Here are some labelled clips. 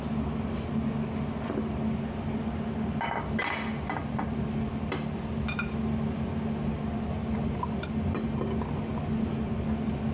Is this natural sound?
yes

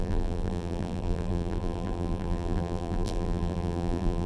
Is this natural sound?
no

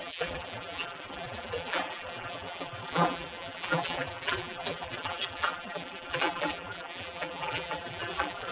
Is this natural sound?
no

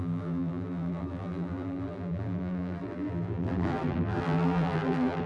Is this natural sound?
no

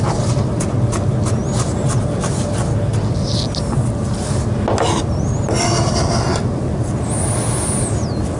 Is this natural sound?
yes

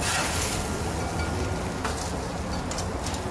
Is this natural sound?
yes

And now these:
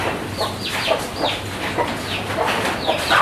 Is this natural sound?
yes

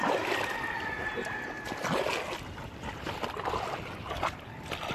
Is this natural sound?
yes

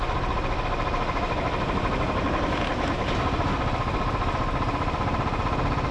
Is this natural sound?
yes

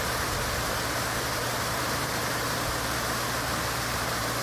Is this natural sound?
no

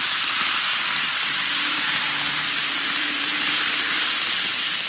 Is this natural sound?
no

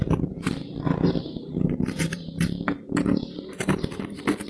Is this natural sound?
no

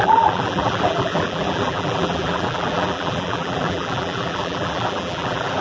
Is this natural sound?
no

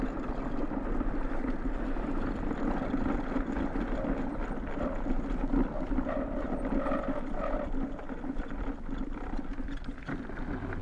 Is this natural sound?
no